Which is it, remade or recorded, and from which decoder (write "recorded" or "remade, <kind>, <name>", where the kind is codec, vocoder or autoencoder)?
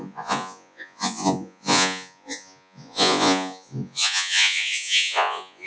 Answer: remade, vocoder, Vocos